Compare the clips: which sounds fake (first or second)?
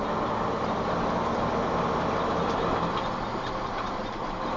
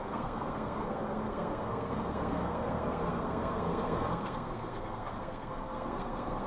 second